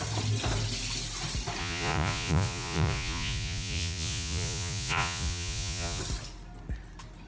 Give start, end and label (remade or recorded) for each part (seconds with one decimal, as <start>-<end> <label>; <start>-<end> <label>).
0.0-1.6 recorded; 1.6-6.0 remade; 6.0-7.3 recorded